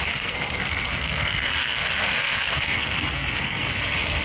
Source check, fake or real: fake